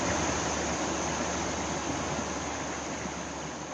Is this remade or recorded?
recorded